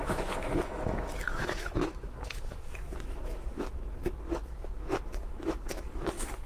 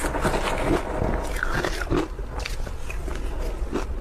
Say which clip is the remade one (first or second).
first